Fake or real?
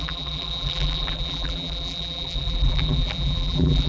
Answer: fake